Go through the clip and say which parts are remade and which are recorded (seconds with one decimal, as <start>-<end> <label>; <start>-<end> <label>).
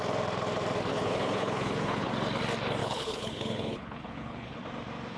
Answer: 0.0-0.9 recorded; 0.9-2.1 remade; 2.1-2.8 recorded; 2.8-4.6 remade; 4.6-5.2 recorded